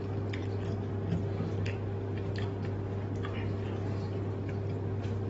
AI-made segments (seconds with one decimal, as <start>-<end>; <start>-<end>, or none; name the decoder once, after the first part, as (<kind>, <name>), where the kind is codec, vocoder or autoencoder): none